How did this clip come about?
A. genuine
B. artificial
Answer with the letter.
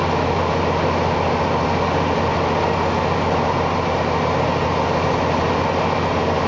A